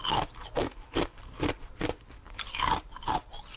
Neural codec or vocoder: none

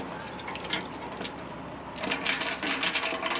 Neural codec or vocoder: none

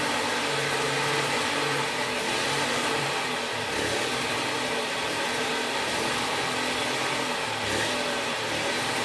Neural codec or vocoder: none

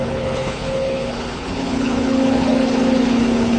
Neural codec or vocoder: codec, HILCodec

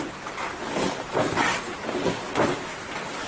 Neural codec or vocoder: none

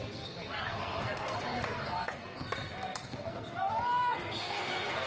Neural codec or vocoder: codec, SNAC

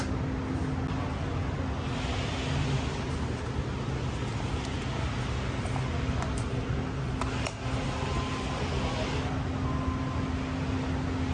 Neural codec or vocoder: none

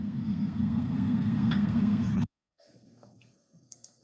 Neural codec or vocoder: codec, SNAC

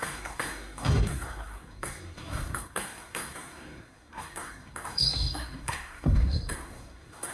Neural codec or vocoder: codec, SNAC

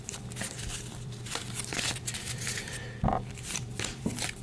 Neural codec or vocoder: vocoder, BigVGAN v2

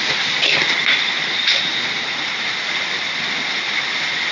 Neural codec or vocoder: none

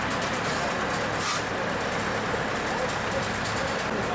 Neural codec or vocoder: none